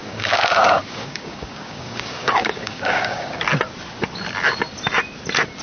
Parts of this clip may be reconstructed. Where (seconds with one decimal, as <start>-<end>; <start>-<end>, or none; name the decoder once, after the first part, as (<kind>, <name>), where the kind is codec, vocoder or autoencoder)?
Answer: 0.0-3.4 (codec, DAC)